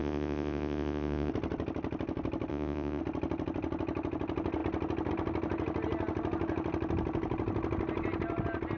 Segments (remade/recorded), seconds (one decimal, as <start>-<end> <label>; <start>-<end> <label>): 0.0-1.3 remade; 1.3-2.5 recorded; 2.5-3.0 remade; 3.0-8.8 recorded